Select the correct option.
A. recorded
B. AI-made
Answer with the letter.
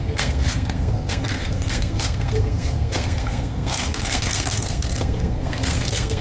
B